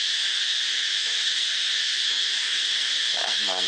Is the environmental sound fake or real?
fake